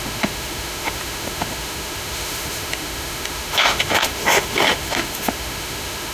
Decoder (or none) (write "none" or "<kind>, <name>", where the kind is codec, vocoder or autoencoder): autoencoder, DAC-VAE